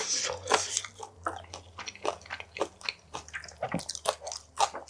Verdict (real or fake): real